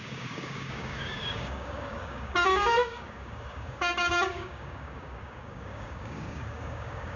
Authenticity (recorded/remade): remade